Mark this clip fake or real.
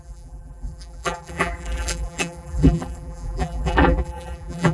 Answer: fake